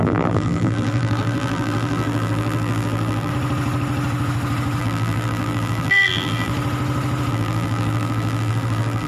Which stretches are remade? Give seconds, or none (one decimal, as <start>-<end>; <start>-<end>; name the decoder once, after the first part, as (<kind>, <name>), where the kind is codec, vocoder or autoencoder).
0.0-3.3 (vocoder, BigVGAN v2); 4.8-6.5; 7.3-9.1